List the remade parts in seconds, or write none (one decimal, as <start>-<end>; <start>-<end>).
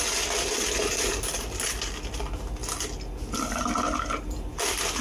1.1-1.7